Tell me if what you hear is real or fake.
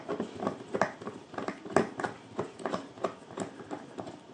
real